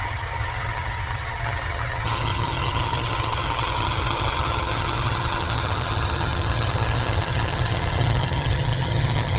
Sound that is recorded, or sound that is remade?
remade